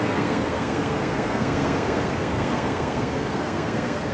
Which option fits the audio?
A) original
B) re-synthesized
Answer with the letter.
B